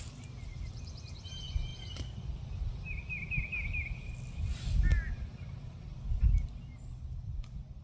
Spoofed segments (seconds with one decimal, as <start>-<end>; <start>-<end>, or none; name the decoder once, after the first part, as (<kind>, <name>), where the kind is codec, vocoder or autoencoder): none

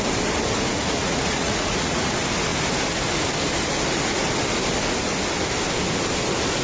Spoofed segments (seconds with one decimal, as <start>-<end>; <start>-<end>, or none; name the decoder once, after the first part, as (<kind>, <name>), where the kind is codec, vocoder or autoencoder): 0.7-2.1 (vocoder, Vocos)

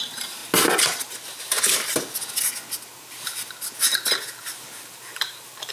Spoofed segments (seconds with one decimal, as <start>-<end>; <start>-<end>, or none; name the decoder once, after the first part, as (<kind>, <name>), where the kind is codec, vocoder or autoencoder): 0.0-0.4 (vocoder, BigVGAN v2); 3.8-5.7

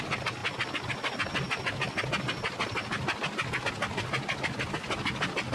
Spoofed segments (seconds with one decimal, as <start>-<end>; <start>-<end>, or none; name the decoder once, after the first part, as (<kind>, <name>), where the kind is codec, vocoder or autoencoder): none